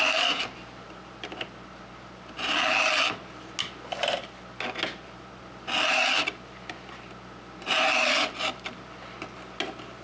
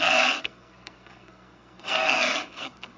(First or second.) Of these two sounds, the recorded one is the first